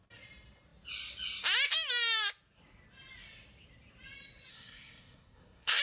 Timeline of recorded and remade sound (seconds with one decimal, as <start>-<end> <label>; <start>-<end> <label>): 0.0-4.5 recorded; 4.5-5.8 remade